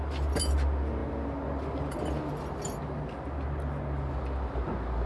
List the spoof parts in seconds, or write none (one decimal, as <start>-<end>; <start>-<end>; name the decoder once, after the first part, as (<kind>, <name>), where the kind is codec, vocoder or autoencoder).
none

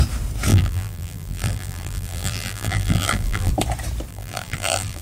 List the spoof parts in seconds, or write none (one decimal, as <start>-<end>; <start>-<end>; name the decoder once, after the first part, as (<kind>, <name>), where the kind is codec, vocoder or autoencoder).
0.5-3.5 (vocoder, BigVGAN v2); 4.1-5.0